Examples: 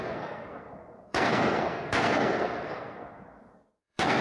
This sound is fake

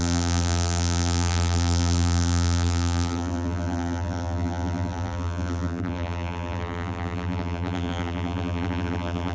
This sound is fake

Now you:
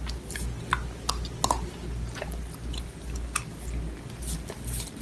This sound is real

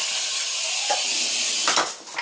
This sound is real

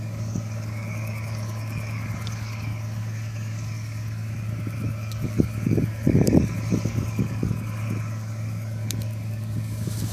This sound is fake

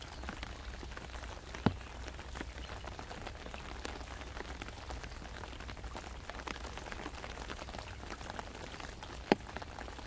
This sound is real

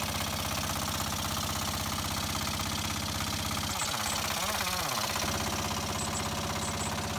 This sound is real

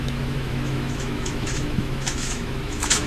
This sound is fake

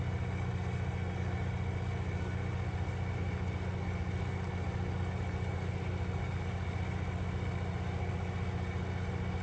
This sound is real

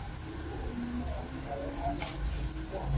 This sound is real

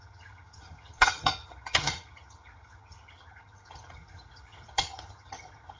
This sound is fake